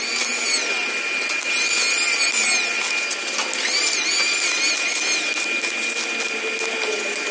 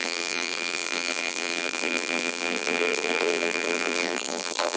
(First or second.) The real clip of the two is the first